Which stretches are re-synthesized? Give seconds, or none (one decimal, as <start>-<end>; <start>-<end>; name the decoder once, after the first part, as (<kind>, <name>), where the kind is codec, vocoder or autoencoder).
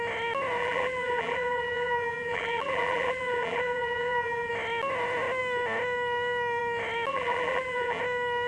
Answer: 0.6-4.5 (vocoder, BigVGAN v2); 7.1-8.0